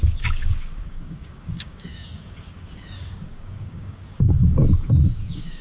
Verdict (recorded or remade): remade